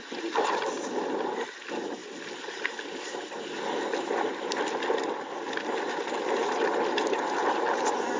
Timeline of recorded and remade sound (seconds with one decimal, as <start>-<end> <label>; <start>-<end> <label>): 0.0-8.2 recorded